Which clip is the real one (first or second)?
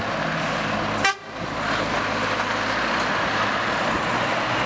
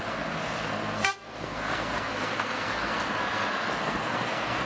first